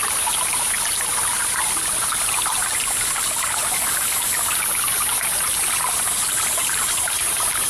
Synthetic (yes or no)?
no